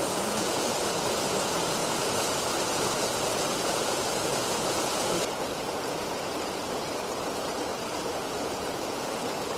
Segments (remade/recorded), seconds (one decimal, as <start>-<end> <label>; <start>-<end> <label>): 0.0-9.6 remade